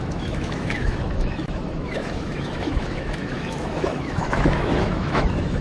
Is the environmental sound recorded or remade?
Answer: remade